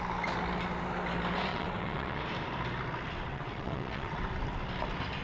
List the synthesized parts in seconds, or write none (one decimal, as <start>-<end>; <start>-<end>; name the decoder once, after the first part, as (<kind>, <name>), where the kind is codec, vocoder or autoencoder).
1.5-2.2 (vocoder, WaveNeXt); 3.3-4.3